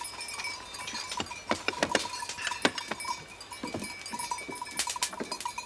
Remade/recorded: recorded